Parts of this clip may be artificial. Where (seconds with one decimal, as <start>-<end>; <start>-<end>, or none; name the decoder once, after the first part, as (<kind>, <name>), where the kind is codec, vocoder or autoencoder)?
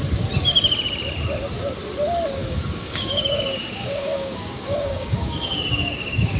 2.4-6.4 (codec, DAC)